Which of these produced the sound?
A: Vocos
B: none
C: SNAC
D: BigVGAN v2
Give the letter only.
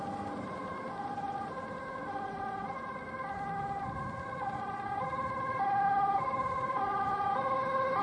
B